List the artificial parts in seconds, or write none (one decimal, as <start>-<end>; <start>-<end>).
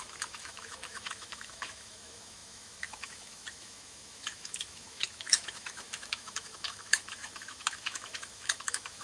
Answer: 0.0-9.0